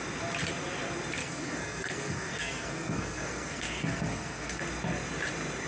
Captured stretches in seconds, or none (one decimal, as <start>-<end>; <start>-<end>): 0.0-1.2; 4.6-5.7